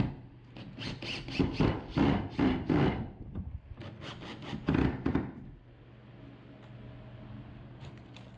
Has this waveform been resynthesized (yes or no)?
no